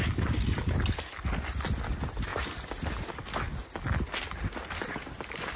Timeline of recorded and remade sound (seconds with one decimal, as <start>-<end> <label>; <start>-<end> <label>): 0.0-5.6 recorded